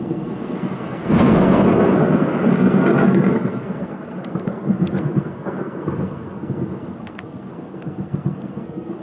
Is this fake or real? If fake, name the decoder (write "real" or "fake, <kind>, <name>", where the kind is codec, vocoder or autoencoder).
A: fake, codec, SNAC